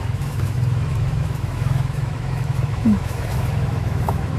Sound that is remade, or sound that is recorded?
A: remade